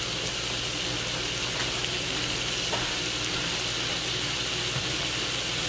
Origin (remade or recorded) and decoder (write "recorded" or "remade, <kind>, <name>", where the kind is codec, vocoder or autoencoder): recorded